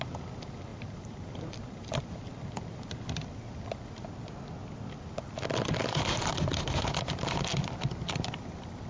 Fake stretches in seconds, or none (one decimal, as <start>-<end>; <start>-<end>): 0.7-2.1